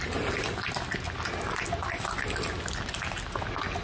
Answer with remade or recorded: recorded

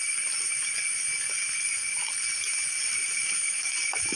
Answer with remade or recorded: recorded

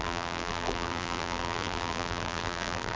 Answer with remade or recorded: remade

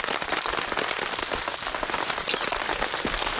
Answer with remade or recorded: recorded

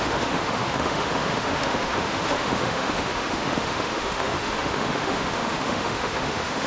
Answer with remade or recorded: remade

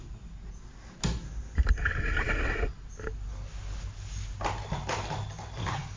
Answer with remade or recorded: recorded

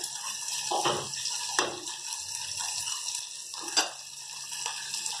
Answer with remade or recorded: recorded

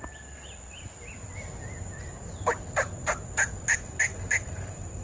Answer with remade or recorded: recorded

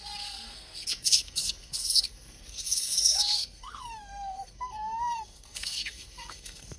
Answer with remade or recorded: remade